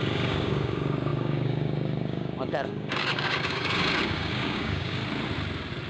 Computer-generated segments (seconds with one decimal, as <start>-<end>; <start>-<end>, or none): 0.0-5.0